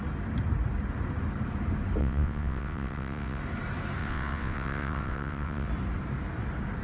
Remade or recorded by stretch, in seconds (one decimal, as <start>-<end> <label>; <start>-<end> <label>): 0.0-2.0 recorded; 2.0-3.4 remade; 3.4-4.0 recorded; 4.0-5.7 remade; 5.7-6.8 recorded